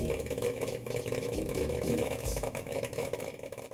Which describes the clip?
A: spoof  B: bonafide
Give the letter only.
A